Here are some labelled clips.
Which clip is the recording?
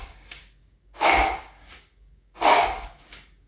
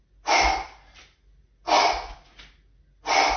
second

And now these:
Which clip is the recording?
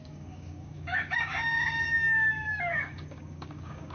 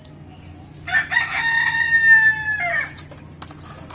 second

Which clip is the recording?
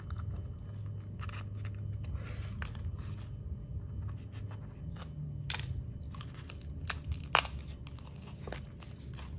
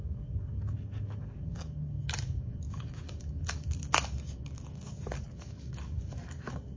first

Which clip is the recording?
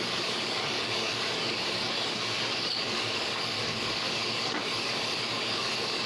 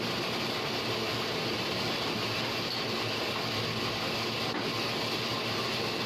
second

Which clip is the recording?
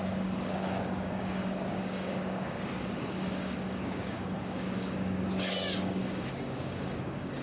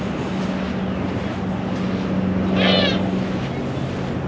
second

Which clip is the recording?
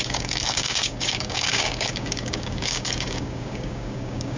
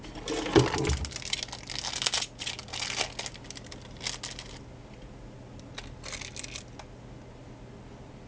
second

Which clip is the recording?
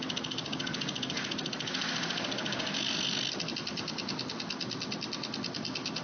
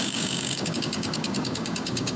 first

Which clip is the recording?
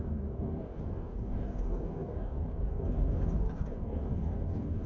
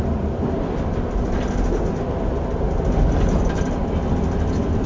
second